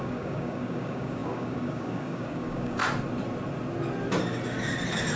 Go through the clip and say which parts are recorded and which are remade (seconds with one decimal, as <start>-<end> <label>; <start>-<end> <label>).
0.0-2.8 remade; 2.8-5.2 recorded